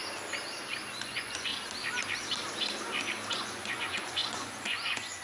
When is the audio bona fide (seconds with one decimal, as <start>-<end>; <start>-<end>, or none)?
0.0-0.9; 1.5-3.3